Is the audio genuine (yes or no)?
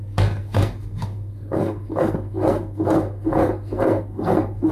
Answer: no